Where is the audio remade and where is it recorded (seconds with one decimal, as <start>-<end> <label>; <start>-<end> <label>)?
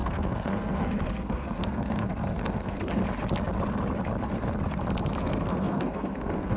0.0-3.0 remade; 3.0-5.2 recorded; 5.2-6.6 remade